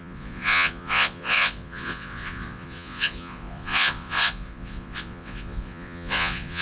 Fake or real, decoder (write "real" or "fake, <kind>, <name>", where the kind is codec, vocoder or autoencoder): fake, vocoder, Vocos